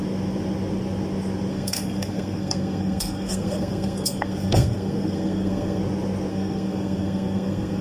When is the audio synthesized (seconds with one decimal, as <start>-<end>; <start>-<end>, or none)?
1.5-5.8; 6.3-7.8